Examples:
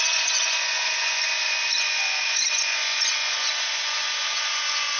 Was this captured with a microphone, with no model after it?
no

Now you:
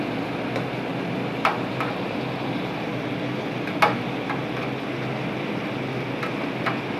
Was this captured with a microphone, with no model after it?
yes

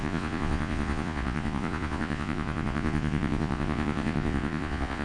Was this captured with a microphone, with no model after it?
no